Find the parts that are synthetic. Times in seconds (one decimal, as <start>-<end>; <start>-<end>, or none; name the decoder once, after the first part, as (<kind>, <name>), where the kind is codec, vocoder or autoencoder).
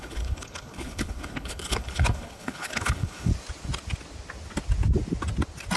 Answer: 0.0-3.3 (codec, HILCodec)